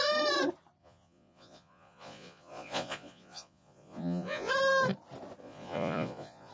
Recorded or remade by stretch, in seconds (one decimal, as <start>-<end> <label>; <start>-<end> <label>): 0.0-0.8 recorded; 0.8-4.5 remade; 4.5-5.4 recorded; 5.4-6.5 remade